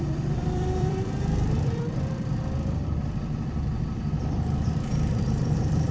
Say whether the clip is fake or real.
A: fake